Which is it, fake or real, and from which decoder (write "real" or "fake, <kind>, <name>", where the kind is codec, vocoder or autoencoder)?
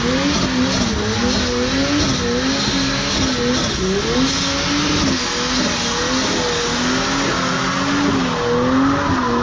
real